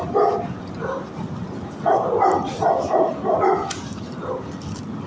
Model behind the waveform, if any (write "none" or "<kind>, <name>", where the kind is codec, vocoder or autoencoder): none